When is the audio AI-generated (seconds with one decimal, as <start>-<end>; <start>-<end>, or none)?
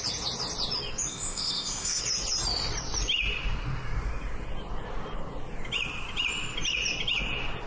1.1-2.0